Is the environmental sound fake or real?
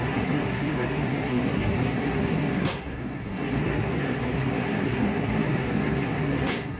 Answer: fake